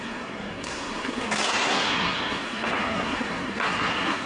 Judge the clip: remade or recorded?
remade